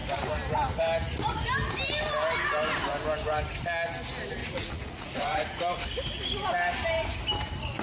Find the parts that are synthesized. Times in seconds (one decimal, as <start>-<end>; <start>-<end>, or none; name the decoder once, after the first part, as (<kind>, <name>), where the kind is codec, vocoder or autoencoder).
4.4-5.8 (vocoder, Vocos)